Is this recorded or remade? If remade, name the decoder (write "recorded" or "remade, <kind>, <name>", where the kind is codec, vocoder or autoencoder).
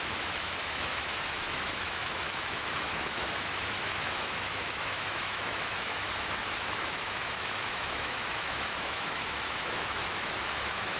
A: remade, autoencoder, DAC-VAE